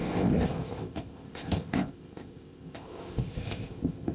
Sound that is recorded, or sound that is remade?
remade